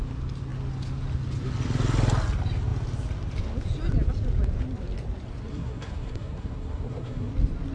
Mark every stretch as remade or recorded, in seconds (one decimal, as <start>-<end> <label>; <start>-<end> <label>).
0.0-5.5 recorded; 5.5-7.3 remade; 7.3-7.7 recorded